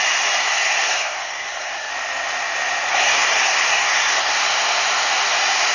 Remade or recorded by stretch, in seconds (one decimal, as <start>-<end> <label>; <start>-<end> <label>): 0.0-0.4 recorded; 0.4-1.9 remade; 1.9-2.9 recorded; 2.9-4.3 remade; 4.3-5.7 recorded